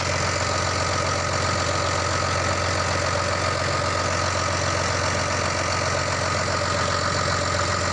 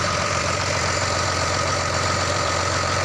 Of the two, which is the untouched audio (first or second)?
first